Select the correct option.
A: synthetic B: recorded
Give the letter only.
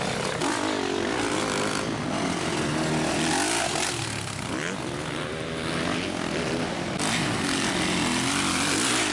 B